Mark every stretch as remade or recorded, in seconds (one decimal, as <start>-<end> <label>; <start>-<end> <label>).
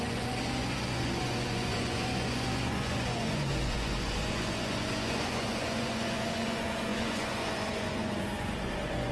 0.0-9.1 remade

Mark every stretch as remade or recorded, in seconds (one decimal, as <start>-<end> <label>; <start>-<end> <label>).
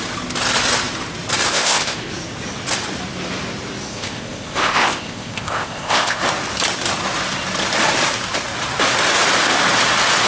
0.0-1.5 recorded; 1.5-2.1 remade; 2.1-3.9 recorded; 3.9-6.2 remade; 6.2-10.3 recorded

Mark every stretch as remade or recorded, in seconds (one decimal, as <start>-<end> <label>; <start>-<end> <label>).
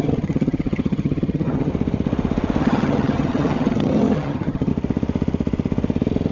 0.0-1.7 remade; 1.7-2.6 recorded; 2.6-4.7 remade; 4.7-6.3 recorded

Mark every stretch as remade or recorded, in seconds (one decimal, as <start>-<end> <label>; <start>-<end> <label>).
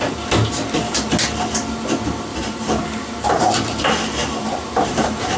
0.0-2.3 recorded; 2.3-2.8 remade; 2.8-4.4 recorded; 4.4-5.4 remade